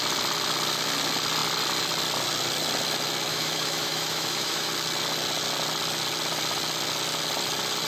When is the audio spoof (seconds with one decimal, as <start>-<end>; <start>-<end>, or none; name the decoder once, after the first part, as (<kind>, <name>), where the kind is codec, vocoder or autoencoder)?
3.3-4.7 (autoencoder, DAC-VAE)